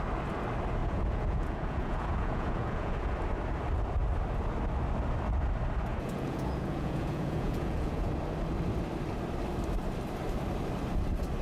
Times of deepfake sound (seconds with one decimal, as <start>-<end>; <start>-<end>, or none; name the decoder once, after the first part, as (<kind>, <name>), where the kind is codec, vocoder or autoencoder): 0.8-3.1 (vocoder, Vocos); 5.9-8.1

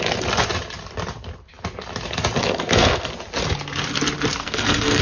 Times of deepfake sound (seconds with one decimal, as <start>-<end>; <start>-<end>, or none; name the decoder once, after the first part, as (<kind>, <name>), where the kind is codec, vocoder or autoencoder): 2.4-3.1 (codec, SNAC); 4.4-5.0

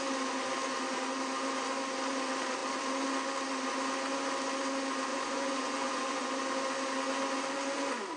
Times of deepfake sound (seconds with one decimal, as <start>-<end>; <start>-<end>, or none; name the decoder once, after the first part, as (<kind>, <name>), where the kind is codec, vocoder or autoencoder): 5.1-6.3 (vocoder, Vocos)

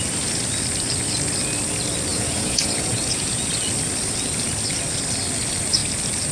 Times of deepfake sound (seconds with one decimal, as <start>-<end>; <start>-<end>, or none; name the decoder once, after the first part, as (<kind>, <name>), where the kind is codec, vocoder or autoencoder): 2.1-3.5 (vocoder, Vocos)